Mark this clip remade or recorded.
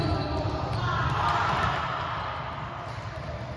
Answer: remade